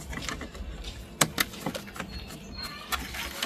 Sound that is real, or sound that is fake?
real